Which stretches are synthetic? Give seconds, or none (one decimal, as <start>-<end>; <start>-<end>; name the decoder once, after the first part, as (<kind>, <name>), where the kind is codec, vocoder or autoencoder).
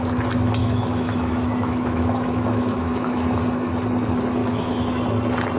0.6-3.4 (autoencoder, DAC-VAE); 4.4-5.0